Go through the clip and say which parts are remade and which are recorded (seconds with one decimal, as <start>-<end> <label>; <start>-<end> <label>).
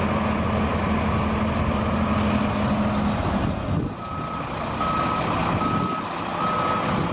0.0-7.1 recorded